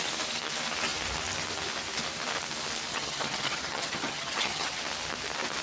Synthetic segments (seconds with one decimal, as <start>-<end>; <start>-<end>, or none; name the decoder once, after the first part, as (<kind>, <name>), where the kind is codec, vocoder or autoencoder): 2.9-4.8 (vocoder, HiFi-GAN)